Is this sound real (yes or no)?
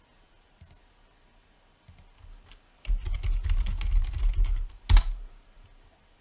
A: yes